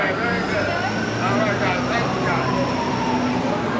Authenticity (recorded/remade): recorded